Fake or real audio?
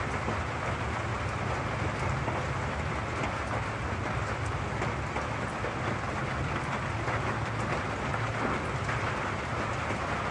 real